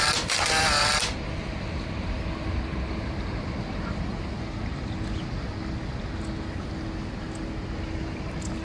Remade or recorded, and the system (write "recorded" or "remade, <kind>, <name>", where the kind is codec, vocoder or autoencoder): recorded